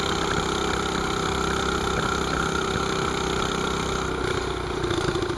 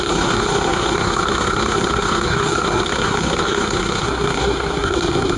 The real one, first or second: first